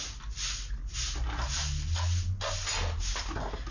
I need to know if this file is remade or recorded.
recorded